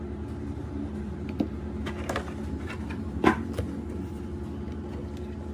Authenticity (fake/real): real